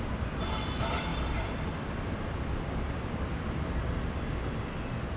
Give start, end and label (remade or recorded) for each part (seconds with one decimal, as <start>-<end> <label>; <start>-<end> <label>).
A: 0.0-1.1 recorded; 1.1-4.2 remade; 4.2-5.2 recorded

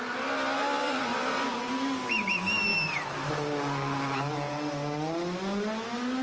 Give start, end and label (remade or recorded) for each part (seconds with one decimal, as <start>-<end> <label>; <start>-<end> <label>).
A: 0.0-6.2 recorded